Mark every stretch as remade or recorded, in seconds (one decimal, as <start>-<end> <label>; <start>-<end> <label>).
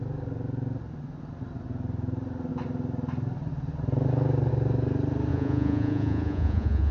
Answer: 0.0-5.3 recorded; 5.3-6.9 remade